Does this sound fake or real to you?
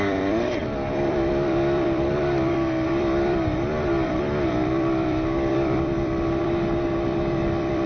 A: fake